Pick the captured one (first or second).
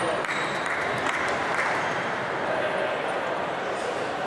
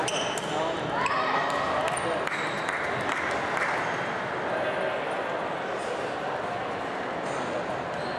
second